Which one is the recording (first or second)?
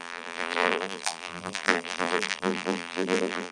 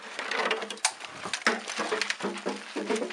second